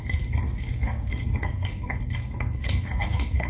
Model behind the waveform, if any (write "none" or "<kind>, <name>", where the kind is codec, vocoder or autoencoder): codec, SNAC